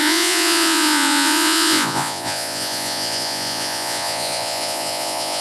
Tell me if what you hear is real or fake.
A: fake